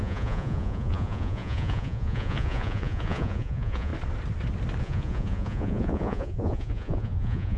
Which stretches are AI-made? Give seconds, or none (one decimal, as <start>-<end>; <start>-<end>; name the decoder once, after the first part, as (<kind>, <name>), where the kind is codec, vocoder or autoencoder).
0.0-3.9 (vocoder, Vocos); 4.8-7.6